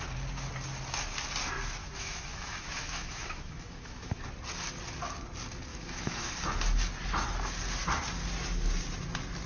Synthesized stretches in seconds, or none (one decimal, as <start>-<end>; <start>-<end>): 1.8-4.2; 5.7-6.3